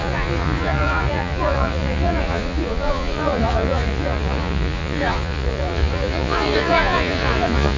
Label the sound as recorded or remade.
remade